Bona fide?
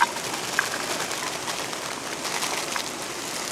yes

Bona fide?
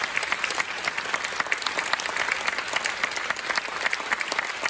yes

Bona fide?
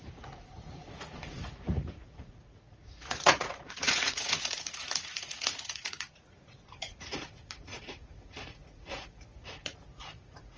no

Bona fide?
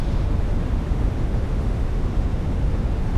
no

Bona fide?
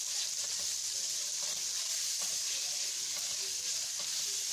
yes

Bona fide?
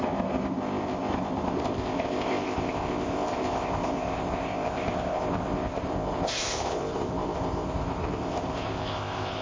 no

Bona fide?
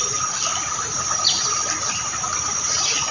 yes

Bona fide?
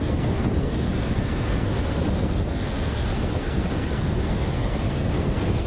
no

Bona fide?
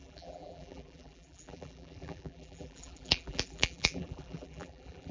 no